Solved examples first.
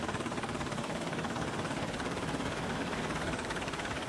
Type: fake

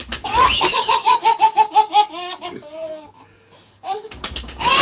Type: fake